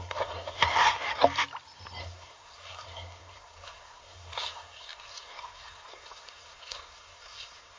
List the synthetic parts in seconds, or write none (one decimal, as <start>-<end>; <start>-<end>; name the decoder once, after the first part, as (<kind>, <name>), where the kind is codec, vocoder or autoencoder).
0.0-1.2 (codec, SNAC); 2.0-7.8